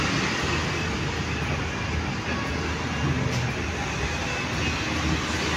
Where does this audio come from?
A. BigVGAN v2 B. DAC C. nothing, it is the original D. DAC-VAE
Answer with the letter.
C